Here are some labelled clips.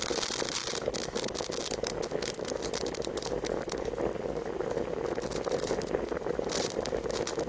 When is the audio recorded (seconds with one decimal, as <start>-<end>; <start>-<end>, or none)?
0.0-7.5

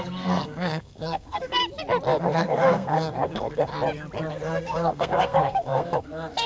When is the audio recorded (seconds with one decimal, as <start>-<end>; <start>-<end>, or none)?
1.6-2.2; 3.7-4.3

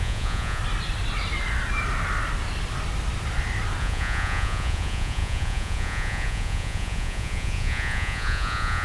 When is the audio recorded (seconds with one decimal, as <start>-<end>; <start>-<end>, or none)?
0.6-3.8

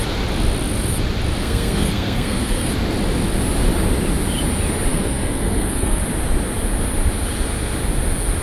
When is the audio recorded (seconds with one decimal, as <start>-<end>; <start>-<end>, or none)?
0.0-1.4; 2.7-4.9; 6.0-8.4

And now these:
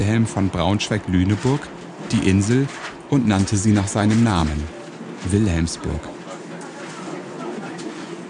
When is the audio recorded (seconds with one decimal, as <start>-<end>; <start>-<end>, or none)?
0.0-2.8; 4.4-6.8

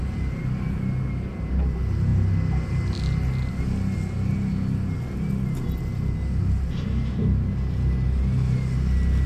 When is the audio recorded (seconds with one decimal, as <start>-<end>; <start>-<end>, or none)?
0.0-9.3